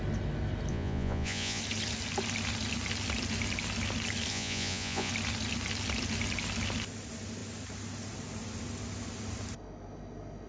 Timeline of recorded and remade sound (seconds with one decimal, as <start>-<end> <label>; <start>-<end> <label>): 0.0-0.7 recorded; 0.7-1.6 remade; 1.6-4.3 recorded; 4.3-5.1 remade; 5.1-10.5 recorded